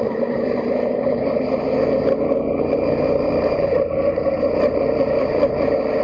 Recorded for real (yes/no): no